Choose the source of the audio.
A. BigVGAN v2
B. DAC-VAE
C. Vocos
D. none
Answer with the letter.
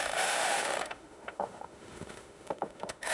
B